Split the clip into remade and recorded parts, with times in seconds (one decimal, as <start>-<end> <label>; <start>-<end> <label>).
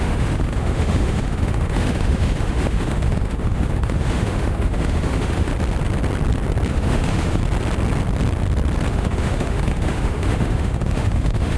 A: 0.0-5.5 remade; 5.5-6.7 recorded; 6.7-7.4 remade; 7.4-8.9 recorded; 8.9-11.6 remade